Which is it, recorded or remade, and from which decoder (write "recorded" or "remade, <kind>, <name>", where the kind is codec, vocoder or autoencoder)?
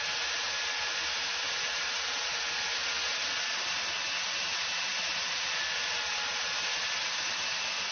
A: recorded